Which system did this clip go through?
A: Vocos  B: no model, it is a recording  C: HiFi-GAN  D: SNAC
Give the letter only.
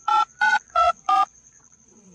A